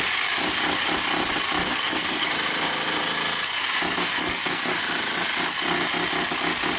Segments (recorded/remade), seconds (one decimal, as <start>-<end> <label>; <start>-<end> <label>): 0.0-1.6 recorded; 1.6-2.3 remade; 2.3-4.0 recorded; 4.0-4.8 remade; 4.8-6.8 recorded